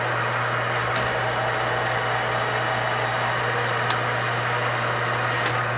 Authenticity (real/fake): real